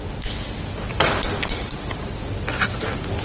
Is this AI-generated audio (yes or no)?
no